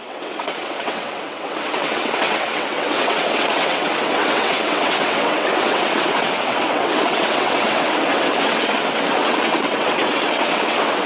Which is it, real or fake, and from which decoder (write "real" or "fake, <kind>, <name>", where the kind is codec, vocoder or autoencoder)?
fake, vocoder, WaveNeXt